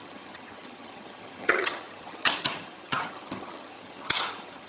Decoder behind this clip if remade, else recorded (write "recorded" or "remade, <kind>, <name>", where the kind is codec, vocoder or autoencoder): remade, vocoder, HiFi-GAN